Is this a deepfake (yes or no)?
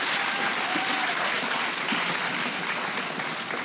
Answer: no